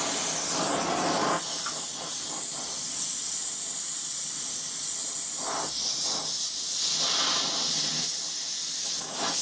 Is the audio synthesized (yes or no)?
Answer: no